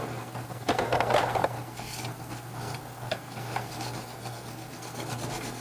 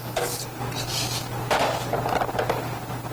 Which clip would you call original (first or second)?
second